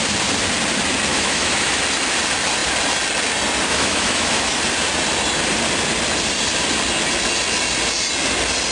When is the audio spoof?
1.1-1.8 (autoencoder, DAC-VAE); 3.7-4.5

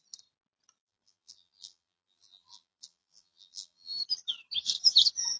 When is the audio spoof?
0.8-4.0 (vocoder, BigVGAN v2)

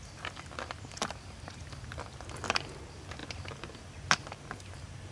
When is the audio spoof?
none

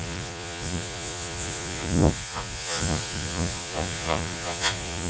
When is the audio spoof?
0.0-5.1 (vocoder, Vocos)

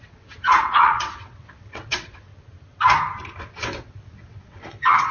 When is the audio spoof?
0.0-2.3 (vocoder, WaveNeXt); 3.4-5.1